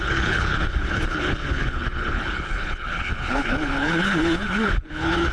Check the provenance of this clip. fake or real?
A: fake